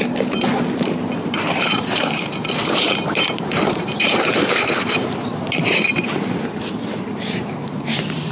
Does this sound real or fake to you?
fake